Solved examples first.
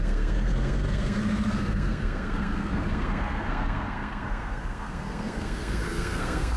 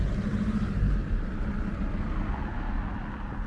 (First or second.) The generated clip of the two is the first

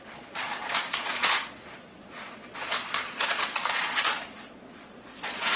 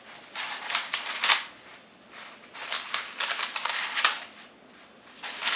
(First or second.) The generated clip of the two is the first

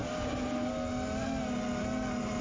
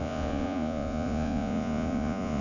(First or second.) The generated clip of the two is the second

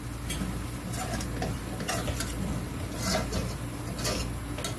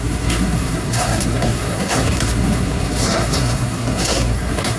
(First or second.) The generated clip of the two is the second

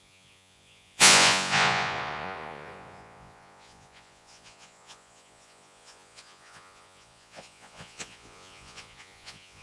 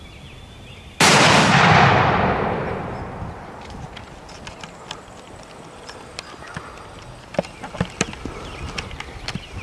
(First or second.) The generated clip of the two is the first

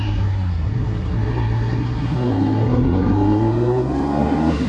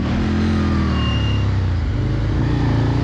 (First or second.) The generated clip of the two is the first